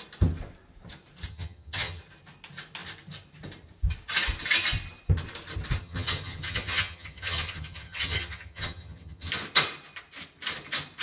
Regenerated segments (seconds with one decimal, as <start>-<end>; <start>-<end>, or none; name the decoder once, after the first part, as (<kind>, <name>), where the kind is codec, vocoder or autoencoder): 1.3-2.0 (vocoder, HiFi-GAN); 5.8-9.3